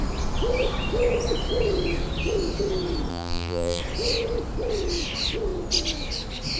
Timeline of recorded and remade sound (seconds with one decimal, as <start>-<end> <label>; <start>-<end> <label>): 0.0-3.1 recorded; 3.1-3.8 remade; 3.8-6.6 recorded